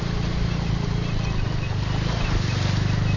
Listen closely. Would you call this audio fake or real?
real